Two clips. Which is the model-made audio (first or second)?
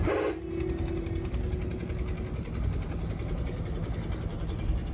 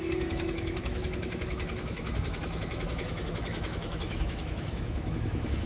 second